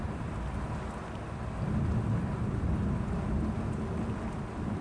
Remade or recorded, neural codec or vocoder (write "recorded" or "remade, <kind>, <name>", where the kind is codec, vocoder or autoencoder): recorded